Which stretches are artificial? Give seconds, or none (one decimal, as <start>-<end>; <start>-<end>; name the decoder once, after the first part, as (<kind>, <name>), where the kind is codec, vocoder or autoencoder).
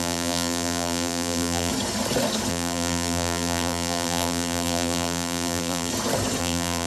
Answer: 0.0-1.7 (vocoder, BigVGAN v2); 2.5-5.9; 6.4-6.9